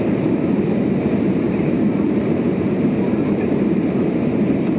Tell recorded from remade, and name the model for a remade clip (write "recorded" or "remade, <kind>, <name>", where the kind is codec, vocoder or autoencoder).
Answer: remade, vocoder, BigVGAN v2